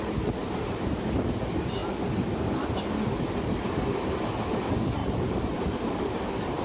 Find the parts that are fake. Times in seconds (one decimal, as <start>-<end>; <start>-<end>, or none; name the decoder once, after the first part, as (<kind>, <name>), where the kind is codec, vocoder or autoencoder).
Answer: 0.4-1.0 (vocoder, BigVGAN v2); 5.0-5.8